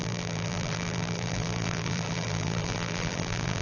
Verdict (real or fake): fake